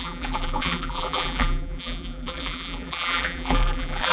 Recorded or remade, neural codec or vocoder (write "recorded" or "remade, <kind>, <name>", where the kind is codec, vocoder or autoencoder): remade, vocoder, BigVGAN v2